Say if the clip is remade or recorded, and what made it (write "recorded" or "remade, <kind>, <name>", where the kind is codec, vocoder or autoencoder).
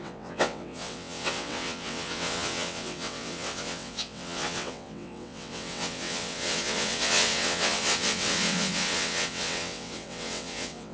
remade, vocoder, WaveNeXt